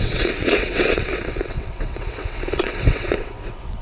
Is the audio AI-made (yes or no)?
yes